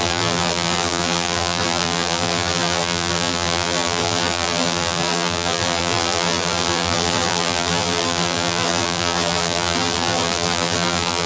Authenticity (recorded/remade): remade